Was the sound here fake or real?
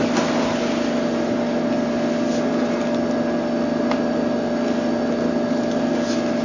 real